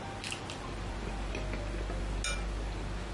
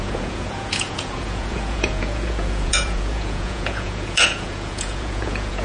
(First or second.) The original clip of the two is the first